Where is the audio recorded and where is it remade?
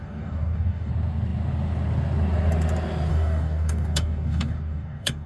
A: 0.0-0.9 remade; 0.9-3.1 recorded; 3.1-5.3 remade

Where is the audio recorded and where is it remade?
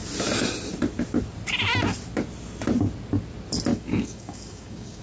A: 0.0-3.7 recorded; 3.7-5.0 remade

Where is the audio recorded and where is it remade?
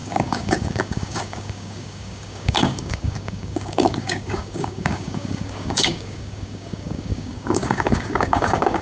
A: 0.0-8.8 remade